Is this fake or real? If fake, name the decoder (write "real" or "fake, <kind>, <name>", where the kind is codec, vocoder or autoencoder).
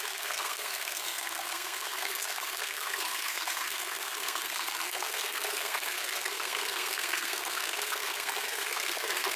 fake, codec, SNAC